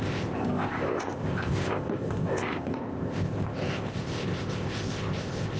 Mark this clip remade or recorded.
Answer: remade